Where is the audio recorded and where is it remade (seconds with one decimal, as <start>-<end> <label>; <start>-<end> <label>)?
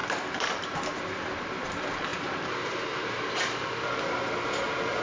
0.0-0.8 remade; 0.8-2.1 recorded; 2.1-3.3 remade; 3.3-5.0 recorded